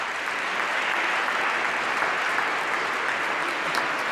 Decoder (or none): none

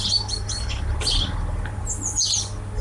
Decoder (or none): none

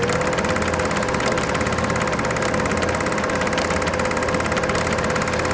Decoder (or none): none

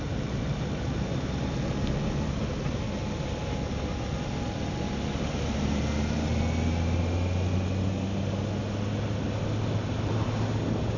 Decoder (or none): none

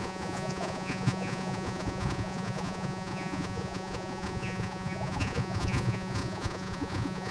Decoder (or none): vocoder, Vocos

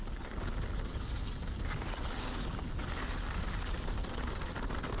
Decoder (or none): none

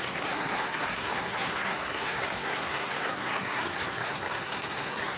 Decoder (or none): codec, SNAC